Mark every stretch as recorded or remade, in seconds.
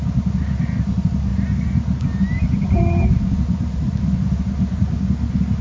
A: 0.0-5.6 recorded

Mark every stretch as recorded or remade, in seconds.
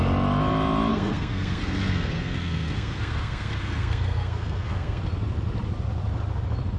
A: 0.0-0.9 recorded; 0.9-5.0 remade; 5.0-6.8 recorded